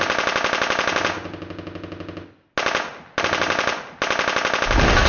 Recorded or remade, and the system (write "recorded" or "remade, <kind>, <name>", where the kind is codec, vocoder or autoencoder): recorded